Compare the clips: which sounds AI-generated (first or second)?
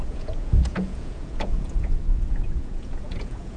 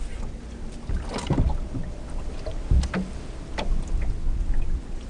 first